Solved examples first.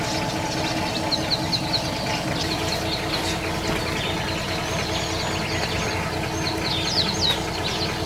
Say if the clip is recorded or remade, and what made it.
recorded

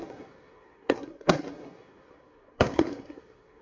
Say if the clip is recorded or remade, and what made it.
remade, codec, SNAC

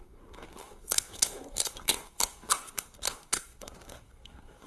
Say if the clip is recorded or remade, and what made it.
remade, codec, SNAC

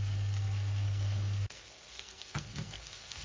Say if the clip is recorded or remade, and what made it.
remade, codec, SNAC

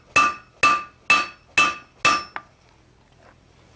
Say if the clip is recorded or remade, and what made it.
recorded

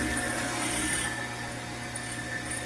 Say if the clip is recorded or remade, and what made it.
recorded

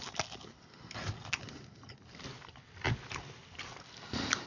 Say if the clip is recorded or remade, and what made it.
recorded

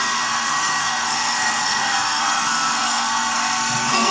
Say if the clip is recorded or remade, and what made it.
remade, codec, SNAC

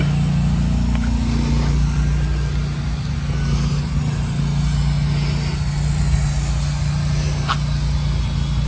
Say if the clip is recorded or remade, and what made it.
recorded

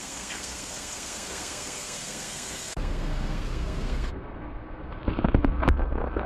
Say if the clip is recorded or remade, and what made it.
remade, codec, SNAC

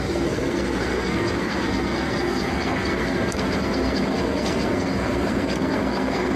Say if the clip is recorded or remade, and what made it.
remade, codec, SNAC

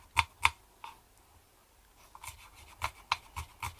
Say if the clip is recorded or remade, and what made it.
recorded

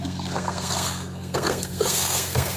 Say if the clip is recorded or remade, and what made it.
remade, codec, SNAC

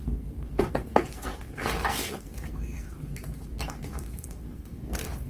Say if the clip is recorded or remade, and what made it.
remade, codec, SNAC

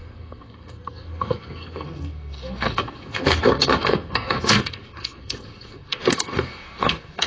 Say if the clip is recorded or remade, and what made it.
remade, codec, SNAC